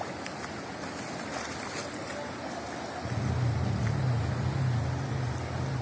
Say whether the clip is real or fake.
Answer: real